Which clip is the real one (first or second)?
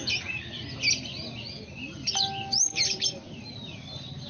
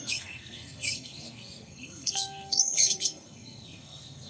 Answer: first